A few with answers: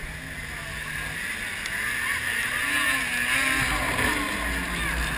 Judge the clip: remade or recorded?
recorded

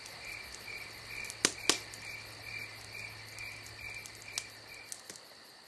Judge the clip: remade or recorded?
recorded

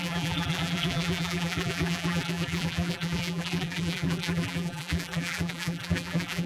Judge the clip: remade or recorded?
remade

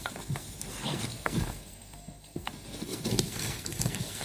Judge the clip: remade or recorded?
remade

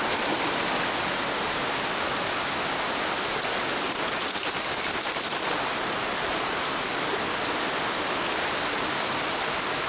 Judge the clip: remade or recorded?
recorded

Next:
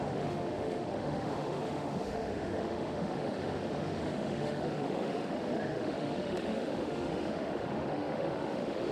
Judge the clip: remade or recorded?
remade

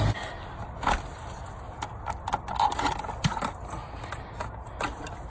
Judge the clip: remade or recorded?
recorded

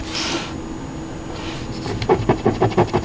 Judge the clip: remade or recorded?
recorded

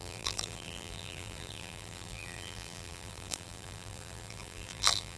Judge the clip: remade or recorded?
remade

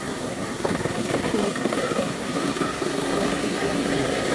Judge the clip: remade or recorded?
remade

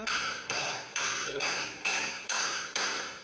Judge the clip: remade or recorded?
remade